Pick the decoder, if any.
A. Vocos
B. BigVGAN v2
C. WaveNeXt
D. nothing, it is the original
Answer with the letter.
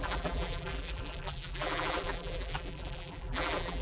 B